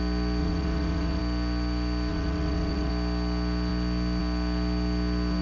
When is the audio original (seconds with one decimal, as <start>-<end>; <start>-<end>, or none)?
0.0-0.4; 1.2-2.1; 2.9-5.4